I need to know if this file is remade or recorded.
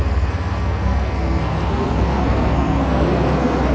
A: remade